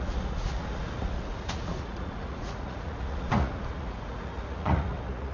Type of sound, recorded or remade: remade